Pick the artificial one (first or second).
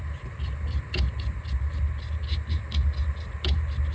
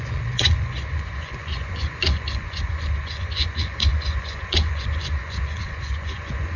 second